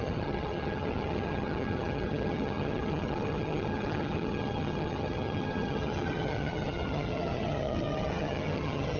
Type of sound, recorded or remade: remade